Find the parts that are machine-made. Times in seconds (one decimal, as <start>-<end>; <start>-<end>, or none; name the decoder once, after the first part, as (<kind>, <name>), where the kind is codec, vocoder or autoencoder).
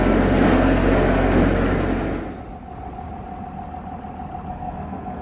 0.0-1.4 (codec, SNAC); 4.5-5.2